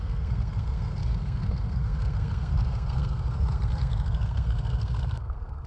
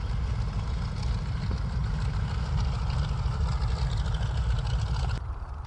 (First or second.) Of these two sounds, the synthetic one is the first